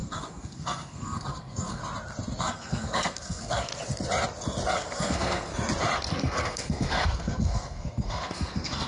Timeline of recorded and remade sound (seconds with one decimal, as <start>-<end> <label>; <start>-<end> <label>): 0.0-1.8 remade; 1.8-2.4 recorded; 2.4-3.7 remade; 3.7-4.7 recorded; 4.7-5.5 remade; 5.5-6.1 recorded; 6.1-8.9 remade